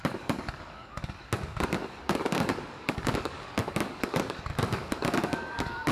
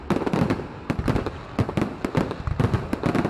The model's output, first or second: first